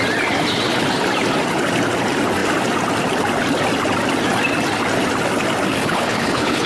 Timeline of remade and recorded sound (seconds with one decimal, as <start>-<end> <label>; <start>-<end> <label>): 0.0-5.8 recorded; 5.8-6.7 remade